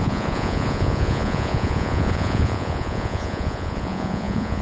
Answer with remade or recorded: remade